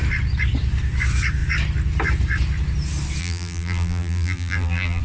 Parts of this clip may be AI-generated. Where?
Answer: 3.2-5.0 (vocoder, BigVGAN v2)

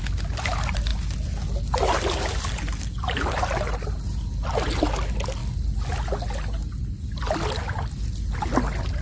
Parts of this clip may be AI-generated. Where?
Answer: none

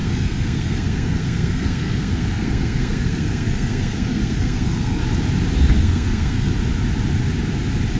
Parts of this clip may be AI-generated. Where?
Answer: 0.0-5.0 (codec, SNAC); 5.8-6.5

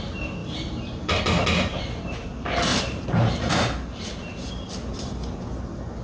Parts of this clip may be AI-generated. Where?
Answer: 0.4-1.2 (vocoder, BigVGAN v2); 2.7-3.5

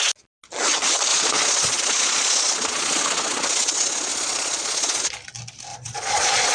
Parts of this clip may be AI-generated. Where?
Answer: 1.1-3.0 (vocoder, Vocos); 4.1-5.0; 5.7-6.5

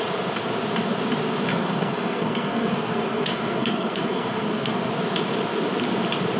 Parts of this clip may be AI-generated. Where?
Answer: 1.5-4.9 (codec, SNAC)

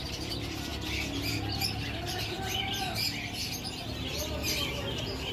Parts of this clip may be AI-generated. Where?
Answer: 0.0-0.7 (vocoder, BigVGAN v2); 1.3-3.4

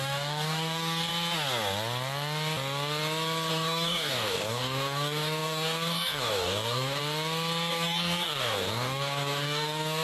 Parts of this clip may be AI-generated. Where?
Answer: 0.0-1.1 (codec, DAC); 3.5-7.0; 7.7-10.0